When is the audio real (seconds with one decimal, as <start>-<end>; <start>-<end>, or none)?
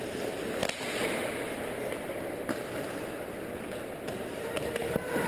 0.0-5.3